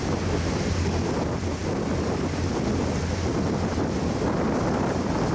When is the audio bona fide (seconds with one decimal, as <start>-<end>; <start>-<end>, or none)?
0.0-5.3